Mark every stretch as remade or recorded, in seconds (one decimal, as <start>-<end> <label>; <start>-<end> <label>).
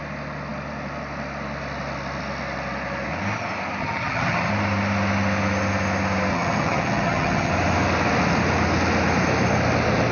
0.0-3.8 recorded; 3.8-4.5 remade; 4.5-6.3 recorded; 6.3-7.5 remade; 7.5-10.1 recorded